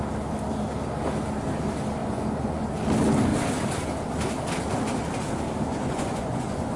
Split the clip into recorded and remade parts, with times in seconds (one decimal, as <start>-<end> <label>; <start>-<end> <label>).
0.0-2.0 recorded; 2.0-2.7 remade; 2.7-5.7 recorded; 5.7-6.8 remade